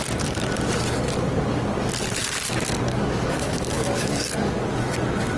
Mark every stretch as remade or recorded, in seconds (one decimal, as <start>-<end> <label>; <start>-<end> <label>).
0.0-2.9 recorded; 2.9-4.5 remade; 4.5-5.4 recorded